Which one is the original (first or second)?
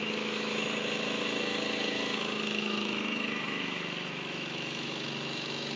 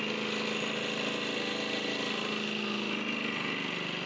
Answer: second